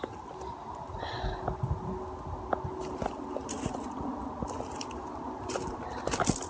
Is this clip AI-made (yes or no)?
no